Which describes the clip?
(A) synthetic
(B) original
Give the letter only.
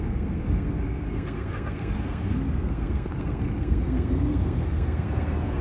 A